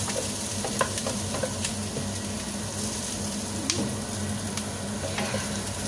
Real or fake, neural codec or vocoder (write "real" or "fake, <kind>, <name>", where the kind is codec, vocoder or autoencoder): real